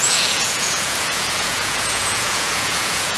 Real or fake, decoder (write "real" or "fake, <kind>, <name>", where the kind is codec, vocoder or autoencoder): fake, vocoder, Vocos